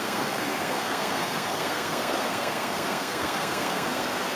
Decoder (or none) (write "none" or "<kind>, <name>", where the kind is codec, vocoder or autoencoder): codec, SNAC